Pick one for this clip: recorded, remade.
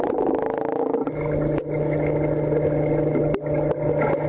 recorded